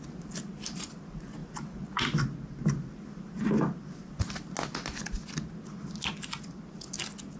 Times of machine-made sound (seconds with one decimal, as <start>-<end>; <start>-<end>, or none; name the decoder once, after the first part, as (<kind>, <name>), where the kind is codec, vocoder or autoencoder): none